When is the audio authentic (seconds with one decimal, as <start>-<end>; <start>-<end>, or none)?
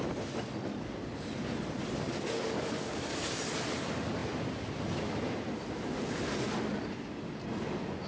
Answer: 0.0-2.1; 3.4-8.1